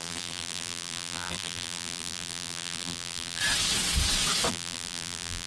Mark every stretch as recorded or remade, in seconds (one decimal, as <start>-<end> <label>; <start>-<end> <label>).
0.0-3.4 remade; 3.4-4.5 recorded; 4.5-5.5 remade